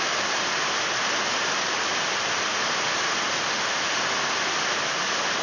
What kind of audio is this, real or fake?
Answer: real